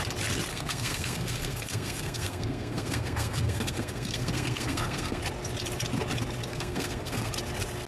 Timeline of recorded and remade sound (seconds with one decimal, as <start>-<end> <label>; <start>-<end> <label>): 0.0-0.5 recorded; 0.5-5.2 remade; 5.2-6.5 recorded; 6.5-7.3 remade; 7.3-7.9 recorded